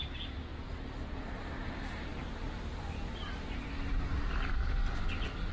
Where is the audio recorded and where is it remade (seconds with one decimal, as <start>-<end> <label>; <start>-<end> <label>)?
0.0-0.5 remade; 0.5-1.4 recorded; 1.4-5.5 remade